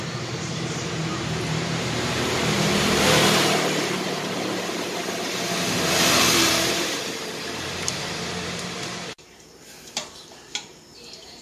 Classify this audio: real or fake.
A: fake